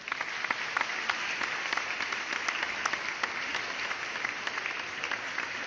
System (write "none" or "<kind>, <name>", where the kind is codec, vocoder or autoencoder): none